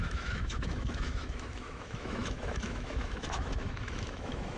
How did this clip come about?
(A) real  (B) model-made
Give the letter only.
B